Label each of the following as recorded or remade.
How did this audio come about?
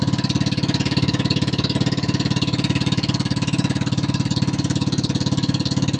remade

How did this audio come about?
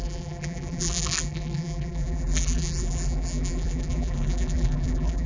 remade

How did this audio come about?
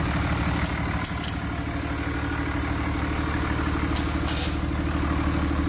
recorded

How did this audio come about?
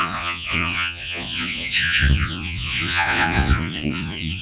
remade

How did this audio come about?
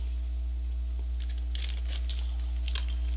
recorded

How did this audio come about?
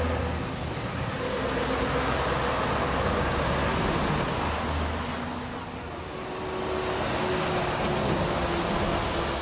recorded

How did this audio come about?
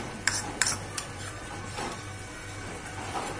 remade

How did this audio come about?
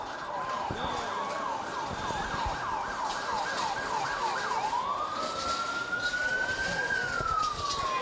recorded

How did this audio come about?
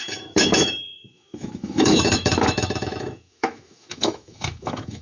remade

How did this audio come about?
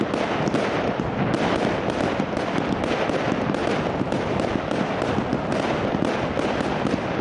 recorded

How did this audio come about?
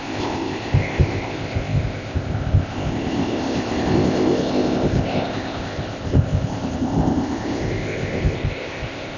remade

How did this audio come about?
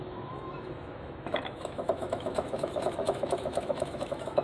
remade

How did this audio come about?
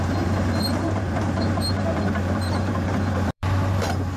remade